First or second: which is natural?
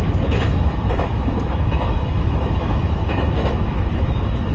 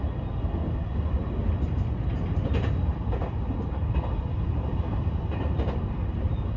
second